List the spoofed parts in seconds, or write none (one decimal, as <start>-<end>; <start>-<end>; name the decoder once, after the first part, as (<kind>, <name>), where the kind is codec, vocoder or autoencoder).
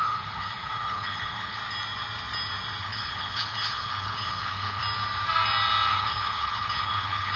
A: 0.0-1.6 (codec, HILCodec); 2.8-4.8; 5.9-7.4